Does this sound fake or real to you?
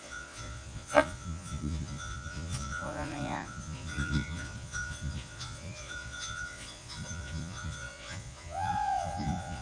fake